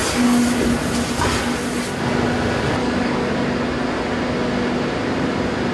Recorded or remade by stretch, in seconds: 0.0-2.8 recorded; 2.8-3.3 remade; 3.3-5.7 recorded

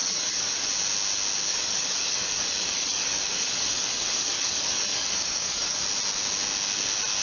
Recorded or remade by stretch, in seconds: 0.0-0.7 remade; 0.7-1.5 recorded; 1.5-5.8 remade; 5.8-7.2 recorded

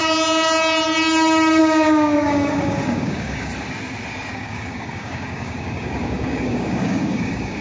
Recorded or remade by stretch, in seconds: 0.0-1.6 recorded; 1.6-3.5 remade; 3.5-4.3 recorded; 4.3-7.6 remade